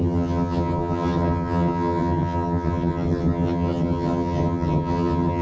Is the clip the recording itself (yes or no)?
no